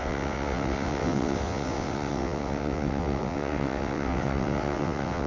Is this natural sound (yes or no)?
no